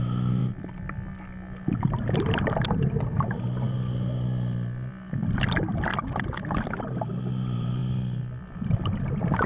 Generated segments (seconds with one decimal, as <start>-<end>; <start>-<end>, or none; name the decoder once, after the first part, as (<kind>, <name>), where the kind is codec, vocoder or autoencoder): none